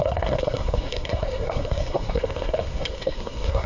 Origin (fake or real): fake